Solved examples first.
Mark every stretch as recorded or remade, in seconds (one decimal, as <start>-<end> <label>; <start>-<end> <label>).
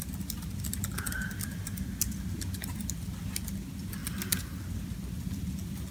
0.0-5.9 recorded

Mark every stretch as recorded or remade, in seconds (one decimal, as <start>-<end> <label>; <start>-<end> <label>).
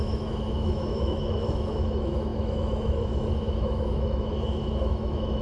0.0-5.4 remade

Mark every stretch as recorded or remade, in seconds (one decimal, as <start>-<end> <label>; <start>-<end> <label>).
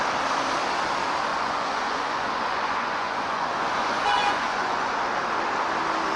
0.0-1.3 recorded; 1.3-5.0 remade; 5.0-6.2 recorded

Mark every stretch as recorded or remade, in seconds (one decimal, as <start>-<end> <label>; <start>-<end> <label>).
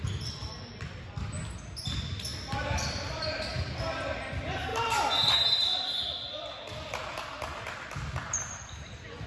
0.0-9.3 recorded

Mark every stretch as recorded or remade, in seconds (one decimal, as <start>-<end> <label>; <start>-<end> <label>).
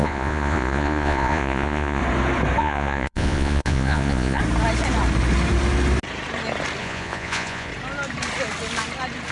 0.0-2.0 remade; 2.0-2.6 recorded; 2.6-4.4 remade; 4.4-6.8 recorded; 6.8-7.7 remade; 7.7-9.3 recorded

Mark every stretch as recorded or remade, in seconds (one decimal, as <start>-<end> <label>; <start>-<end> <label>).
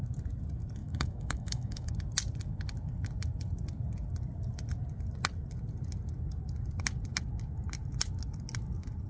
0.0-0.8 recorded; 0.8-1.9 remade; 1.9-9.1 recorded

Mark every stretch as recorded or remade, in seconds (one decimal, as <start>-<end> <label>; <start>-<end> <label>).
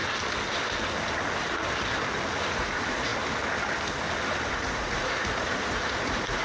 0.0-2.5 recorded; 2.5-3.1 remade; 3.1-4.5 recorded; 4.5-6.4 remade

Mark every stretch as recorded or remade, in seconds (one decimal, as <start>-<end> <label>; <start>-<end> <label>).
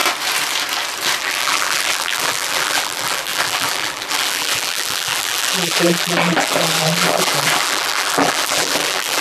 0.0-1.2 recorded; 1.2-9.2 remade